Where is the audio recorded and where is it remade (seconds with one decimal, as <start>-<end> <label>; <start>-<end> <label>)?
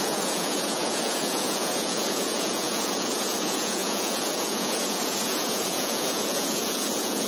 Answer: 0.0-7.3 remade